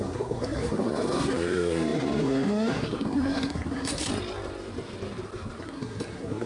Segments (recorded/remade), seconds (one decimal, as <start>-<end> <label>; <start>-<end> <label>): 0.0-4.1 remade; 4.1-5.6 recorded; 5.6-6.5 remade